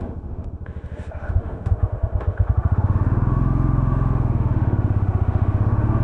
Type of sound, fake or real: fake